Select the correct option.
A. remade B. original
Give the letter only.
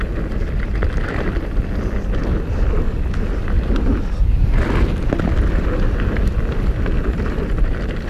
B